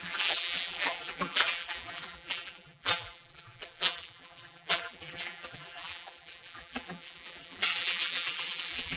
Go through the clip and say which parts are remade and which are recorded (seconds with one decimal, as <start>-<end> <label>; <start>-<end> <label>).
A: 0.0-9.0 remade